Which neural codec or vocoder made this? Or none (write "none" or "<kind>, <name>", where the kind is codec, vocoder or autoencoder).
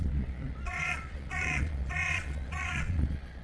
vocoder, Vocos